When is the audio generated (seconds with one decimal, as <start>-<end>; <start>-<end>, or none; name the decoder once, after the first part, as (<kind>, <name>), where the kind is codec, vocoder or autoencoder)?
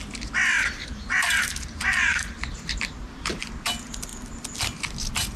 0.8-2.7 (vocoder, BigVGAN v2)